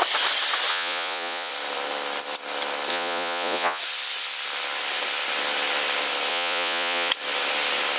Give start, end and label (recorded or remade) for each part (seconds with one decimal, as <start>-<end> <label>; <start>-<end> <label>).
0.0-0.7 recorded; 0.7-1.5 remade; 1.5-2.9 recorded; 2.9-3.8 remade; 3.8-6.3 recorded; 6.3-7.1 remade; 7.1-8.0 recorded

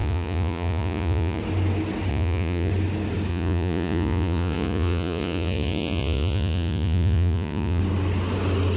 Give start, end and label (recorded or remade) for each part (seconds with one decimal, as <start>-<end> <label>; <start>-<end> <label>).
0.0-1.4 remade; 1.4-2.1 recorded; 2.1-2.7 remade; 2.7-3.3 recorded; 3.3-7.8 remade; 7.8-8.8 recorded

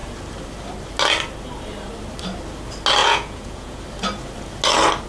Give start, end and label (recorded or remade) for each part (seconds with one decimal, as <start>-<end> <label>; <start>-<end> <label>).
0.0-3.0 recorded; 3.0-3.8 remade; 3.8-5.1 recorded